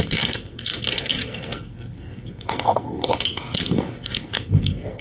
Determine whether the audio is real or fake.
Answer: fake